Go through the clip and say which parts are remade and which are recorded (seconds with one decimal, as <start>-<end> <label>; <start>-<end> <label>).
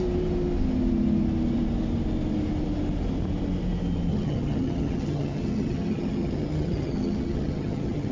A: 0.0-4.1 recorded; 4.1-8.1 remade